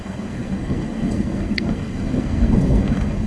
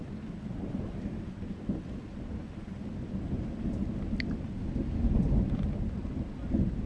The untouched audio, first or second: second